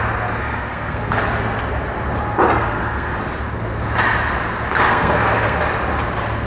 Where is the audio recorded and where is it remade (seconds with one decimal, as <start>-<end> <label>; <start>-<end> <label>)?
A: 0.0-0.4 recorded; 0.4-1.2 remade; 1.2-2.6 recorded; 2.6-3.2 remade; 3.2-4.7 recorded; 4.7-5.6 remade; 5.6-6.5 recorded